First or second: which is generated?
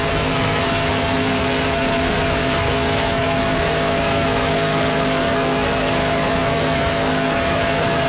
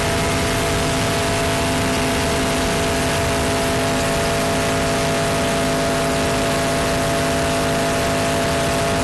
first